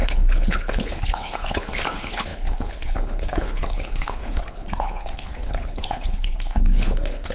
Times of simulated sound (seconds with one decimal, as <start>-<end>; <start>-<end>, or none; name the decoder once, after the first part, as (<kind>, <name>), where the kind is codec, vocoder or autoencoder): 0.0-7.3 (codec, HILCodec)